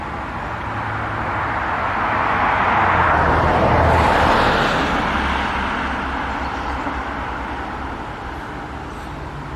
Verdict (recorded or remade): recorded